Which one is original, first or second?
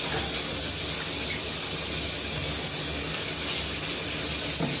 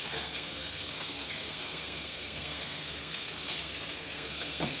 first